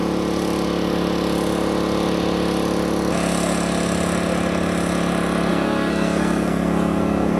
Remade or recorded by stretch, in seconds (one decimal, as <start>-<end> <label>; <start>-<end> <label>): 0.0-5.5 recorded; 5.5-7.4 remade